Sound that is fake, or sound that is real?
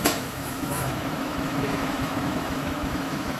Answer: fake